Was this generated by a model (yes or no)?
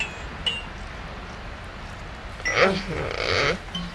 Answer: no